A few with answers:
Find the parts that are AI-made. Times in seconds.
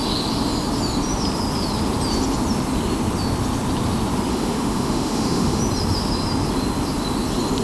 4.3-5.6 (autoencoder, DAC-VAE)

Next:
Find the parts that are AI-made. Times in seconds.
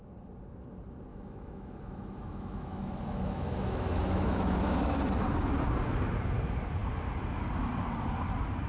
1.1-5.0 (autoencoder, DAC-VAE)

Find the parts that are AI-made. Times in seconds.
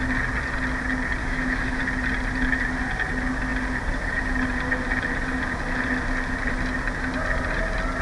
1.2-1.8 (autoencoder, DAC-VAE)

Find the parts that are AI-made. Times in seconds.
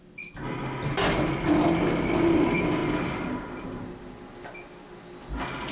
none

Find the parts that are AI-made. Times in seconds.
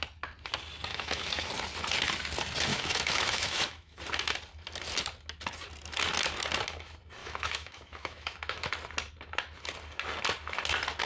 0.9-1.5 (autoencoder, DAC-VAE); 2.7-4.0; 7.2-8.7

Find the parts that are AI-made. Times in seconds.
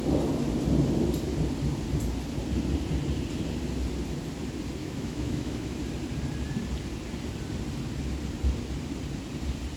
4.8-5.8 (autoencoder, DAC-VAE)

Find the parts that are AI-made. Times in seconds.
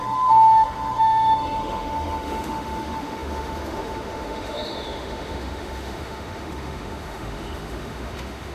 0.0-8.5 (autoencoder, DAC-VAE)